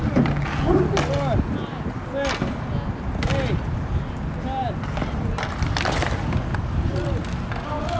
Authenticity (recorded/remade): recorded